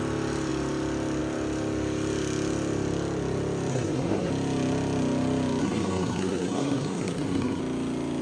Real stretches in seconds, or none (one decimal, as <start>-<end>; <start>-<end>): 0.0-3.7; 4.3-5.6; 7.6-8.2

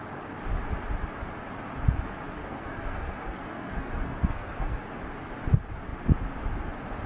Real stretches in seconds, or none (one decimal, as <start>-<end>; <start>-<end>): 0.0-2.4; 4.8-7.1